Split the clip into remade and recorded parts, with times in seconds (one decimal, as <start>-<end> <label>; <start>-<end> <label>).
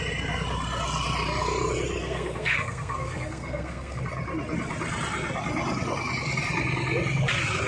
0.0-2.0 recorded; 2.0-4.0 remade; 4.0-7.7 recorded